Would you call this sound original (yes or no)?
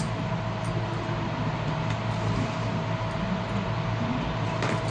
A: yes